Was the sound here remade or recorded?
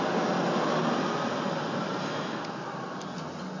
recorded